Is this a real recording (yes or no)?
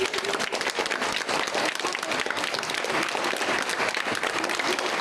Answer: yes